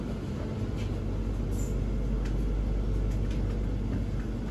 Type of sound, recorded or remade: recorded